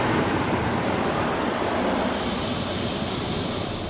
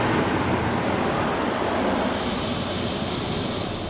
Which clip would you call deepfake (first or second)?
first